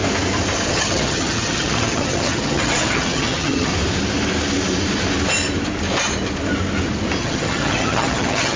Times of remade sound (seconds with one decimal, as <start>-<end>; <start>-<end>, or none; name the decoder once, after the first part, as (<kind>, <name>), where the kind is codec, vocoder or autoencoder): 0.7-3.7 (vocoder, HiFi-GAN); 7.2-8.6